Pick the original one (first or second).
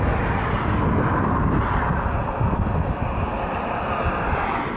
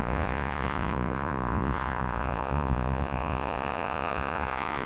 first